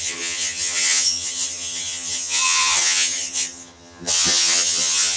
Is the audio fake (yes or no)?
yes